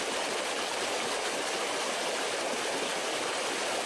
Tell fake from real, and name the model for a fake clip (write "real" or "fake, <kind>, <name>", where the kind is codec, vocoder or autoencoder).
real